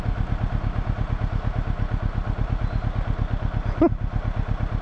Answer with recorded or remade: recorded